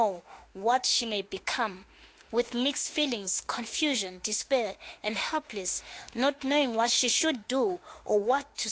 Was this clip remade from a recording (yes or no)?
yes